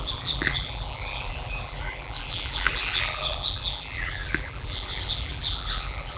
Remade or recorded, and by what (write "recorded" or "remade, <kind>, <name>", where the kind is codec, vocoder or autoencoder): remade, vocoder, BigVGAN v2